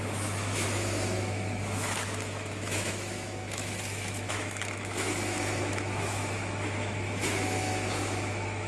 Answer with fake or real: fake